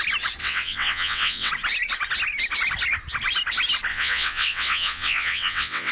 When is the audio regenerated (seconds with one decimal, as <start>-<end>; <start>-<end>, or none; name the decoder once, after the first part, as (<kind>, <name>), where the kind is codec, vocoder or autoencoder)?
0.4-1.5 (vocoder, WaveNeXt); 3.9-5.9